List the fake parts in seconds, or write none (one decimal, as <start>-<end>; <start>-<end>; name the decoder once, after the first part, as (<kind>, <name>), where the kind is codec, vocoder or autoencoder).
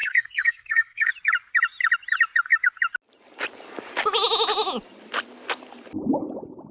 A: 0.0-1.1 (codec, SNAC)